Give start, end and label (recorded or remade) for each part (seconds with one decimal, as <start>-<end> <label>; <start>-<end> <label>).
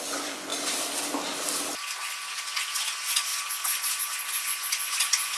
0.0-0.5 remade; 0.5-2.1 recorded; 2.1-5.4 remade